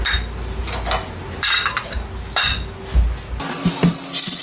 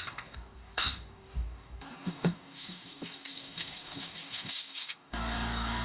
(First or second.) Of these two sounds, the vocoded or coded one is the second